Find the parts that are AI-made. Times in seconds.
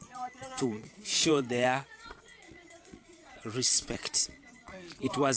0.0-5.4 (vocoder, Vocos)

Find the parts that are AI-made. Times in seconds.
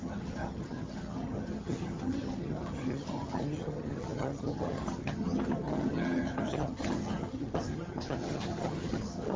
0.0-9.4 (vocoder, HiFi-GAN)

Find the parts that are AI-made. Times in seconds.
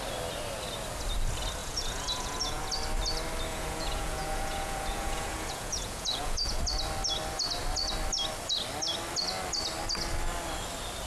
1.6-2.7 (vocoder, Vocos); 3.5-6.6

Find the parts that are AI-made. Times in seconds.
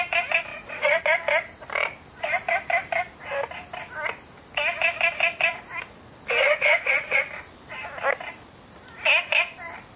0.5-1.0 (vocoder, Vocos); 6.4-7.2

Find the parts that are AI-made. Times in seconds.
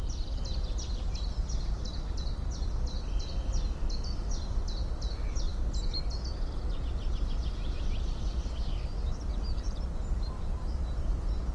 none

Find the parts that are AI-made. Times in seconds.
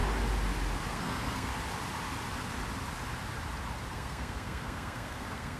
0.9-1.5 (codec, SNAC); 3.9-5.6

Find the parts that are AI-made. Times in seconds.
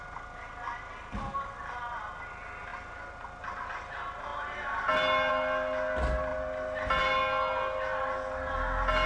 none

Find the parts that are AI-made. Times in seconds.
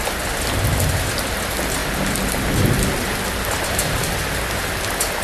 none